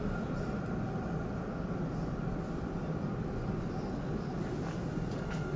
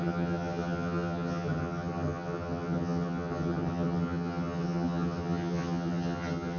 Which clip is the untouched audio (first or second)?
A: first